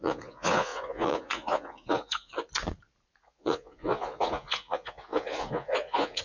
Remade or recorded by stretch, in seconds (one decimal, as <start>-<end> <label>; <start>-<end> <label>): 0.0-2.3 remade; 2.3-3.2 recorded; 3.2-6.2 remade